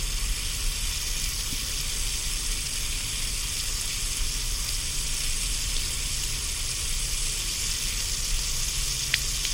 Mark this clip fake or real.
real